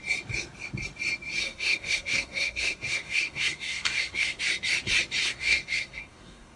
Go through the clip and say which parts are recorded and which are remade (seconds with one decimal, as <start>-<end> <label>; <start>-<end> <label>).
0.0-1.4 recorded; 1.4-4.4 remade; 4.4-5.2 recorded; 5.2-6.6 remade